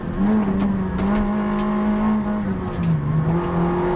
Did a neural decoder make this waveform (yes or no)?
no